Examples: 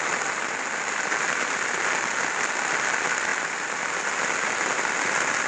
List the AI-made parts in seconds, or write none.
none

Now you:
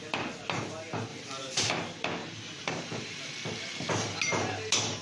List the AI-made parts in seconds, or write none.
1.1-1.7; 2.2-3.3

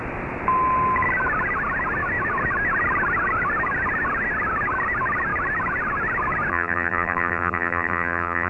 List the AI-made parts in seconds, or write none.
6.5-8.5

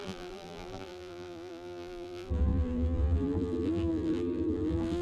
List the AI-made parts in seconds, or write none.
0.0-5.0

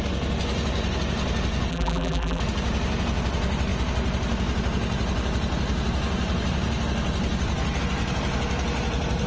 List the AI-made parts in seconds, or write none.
1.7-2.4

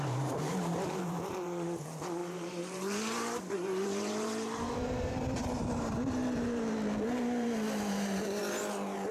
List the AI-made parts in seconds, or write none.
0.0-8.4

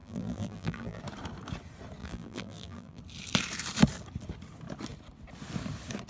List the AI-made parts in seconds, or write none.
0.0-1.0; 2.0-3.0

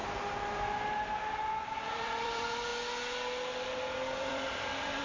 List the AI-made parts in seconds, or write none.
1.9-2.7; 4.2-5.0